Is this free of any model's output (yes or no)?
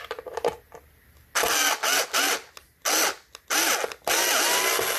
yes